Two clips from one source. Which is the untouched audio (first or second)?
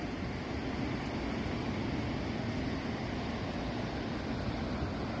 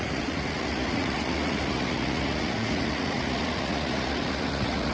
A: first